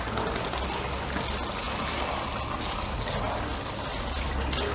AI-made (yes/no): no